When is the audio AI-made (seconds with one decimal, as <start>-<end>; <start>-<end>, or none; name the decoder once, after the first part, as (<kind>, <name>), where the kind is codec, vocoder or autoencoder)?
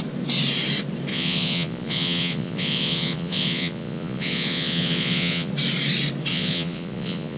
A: 1.1-5.5 (vocoder, Vocos); 6.3-7.4